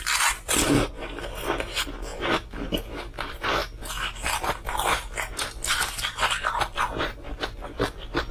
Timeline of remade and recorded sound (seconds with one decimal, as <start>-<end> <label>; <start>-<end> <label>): 0.0-8.3 recorded